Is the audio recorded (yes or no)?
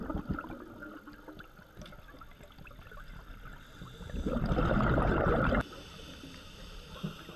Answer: yes